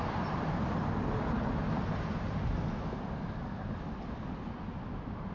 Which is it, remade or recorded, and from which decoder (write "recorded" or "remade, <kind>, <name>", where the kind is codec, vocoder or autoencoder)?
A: recorded